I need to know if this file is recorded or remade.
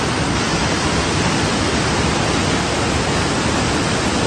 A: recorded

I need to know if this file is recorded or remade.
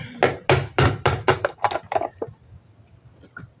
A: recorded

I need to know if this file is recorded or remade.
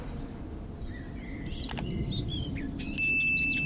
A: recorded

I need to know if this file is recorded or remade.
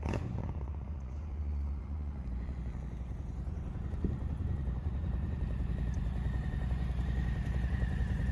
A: remade